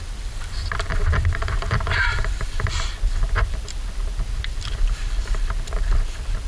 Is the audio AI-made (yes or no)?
yes